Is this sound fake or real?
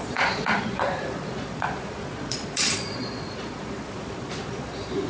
fake